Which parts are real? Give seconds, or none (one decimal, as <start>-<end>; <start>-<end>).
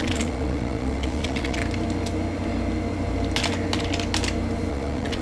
1.6-4.7